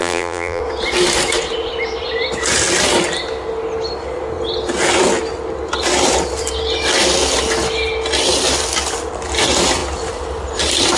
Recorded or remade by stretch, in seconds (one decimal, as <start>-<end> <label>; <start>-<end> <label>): 0.0-0.6 remade; 0.6-11.0 recorded